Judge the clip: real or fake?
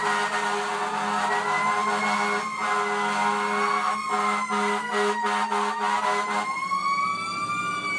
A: real